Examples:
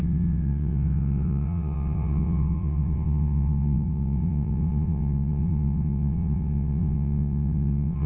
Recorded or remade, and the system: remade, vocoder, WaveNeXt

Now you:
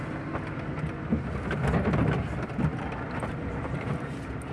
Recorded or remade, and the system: recorded